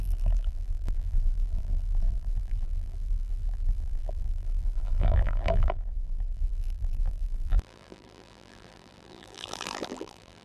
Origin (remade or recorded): remade